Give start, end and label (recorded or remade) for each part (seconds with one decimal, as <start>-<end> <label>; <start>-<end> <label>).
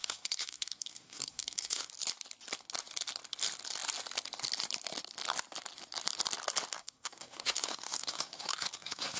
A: 0.0-1.9 remade; 1.9-6.7 recorded; 6.7-9.2 remade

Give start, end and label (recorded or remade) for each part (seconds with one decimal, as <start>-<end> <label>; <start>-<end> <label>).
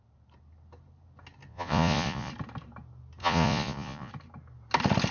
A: 0.0-1.5 recorded; 1.5-2.3 remade; 2.3-3.2 recorded; 3.2-4.1 remade; 4.1-5.1 recorded